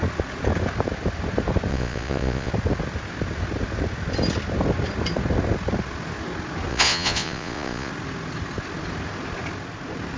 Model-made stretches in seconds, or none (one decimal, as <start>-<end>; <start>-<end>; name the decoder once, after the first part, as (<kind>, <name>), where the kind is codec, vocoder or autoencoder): 1.7-2.5 (vocoder, Vocos); 6.7-7.9